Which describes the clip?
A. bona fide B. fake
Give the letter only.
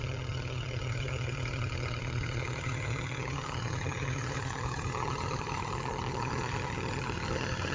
B